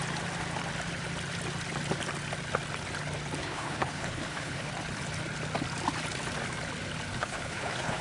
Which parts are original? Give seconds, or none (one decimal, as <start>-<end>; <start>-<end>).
0.0-3.4; 4.7-7.2